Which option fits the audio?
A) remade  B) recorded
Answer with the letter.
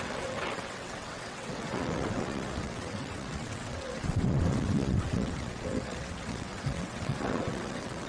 A